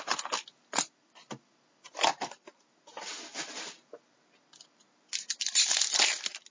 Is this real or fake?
real